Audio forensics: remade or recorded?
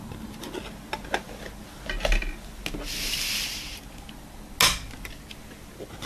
recorded